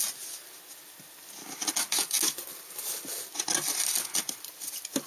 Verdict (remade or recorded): recorded